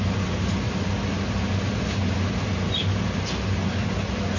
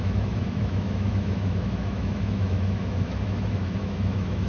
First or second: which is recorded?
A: first